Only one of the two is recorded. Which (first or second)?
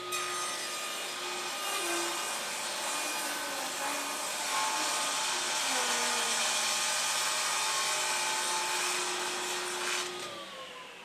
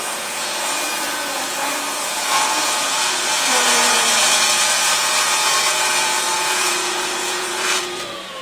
first